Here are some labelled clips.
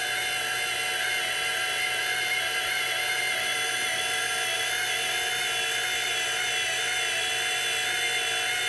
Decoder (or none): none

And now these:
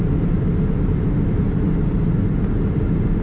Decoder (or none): none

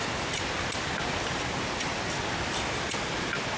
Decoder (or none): none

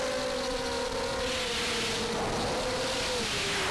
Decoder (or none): none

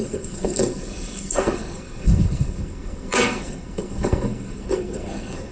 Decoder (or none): codec, SNAC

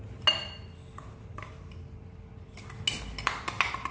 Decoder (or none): none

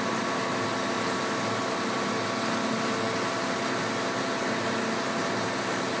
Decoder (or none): none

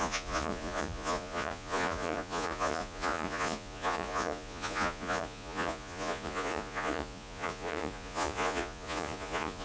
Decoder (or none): vocoder, Vocos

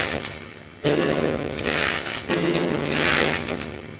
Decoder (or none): vocoder, HiFi-GAN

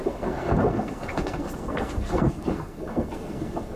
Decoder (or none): codec, SNAC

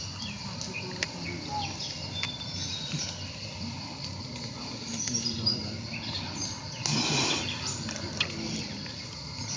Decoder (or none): none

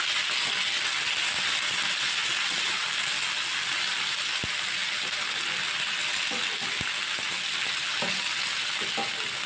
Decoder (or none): none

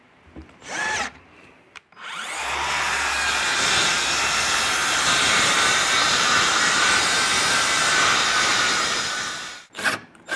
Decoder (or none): vocoder, BigVGAN v2